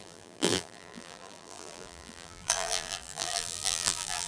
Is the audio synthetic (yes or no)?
yes